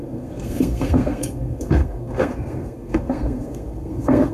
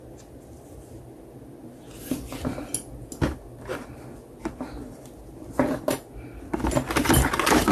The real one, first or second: second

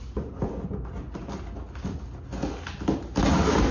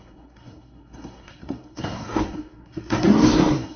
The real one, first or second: first